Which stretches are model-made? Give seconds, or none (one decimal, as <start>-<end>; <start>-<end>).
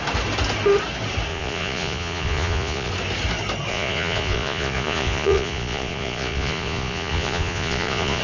1.3-2.9; 3.7-8.2